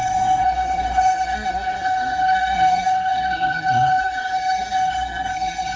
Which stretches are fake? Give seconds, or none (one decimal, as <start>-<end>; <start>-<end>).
0.0-5.8